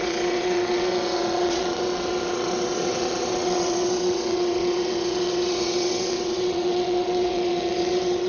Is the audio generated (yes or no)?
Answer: yes